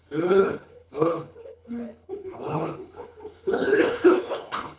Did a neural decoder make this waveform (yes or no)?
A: yes